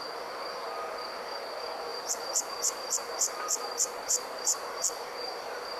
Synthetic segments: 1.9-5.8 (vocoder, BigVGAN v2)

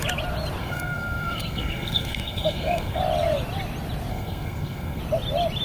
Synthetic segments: 0.6-3.0 (codec, SNAC); 4.1-5.0

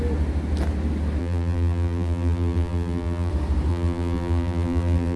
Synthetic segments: 1.2-3.3 (vocoder, BigVGAN v2); 3.7-5.2

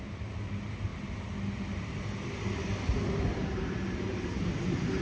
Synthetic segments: none